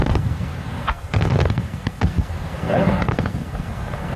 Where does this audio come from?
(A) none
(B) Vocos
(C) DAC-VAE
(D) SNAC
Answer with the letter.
D